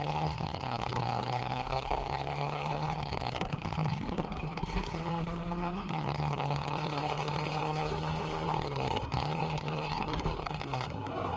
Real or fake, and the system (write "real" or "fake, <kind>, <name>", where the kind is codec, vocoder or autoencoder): fake, codec, SNAC